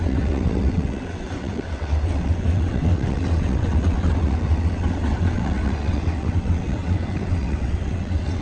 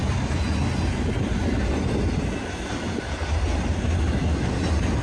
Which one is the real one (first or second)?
second